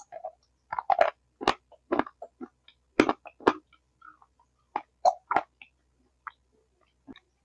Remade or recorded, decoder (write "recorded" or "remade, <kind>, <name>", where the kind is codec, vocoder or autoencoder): recorded